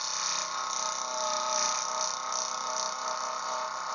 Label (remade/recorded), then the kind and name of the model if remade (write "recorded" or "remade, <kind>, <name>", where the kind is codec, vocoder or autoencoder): recorded